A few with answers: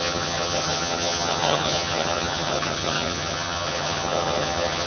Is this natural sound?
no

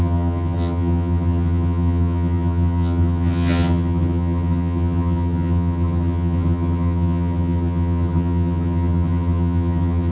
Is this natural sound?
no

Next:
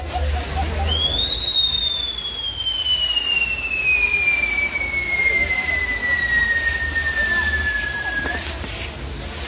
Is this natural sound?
yes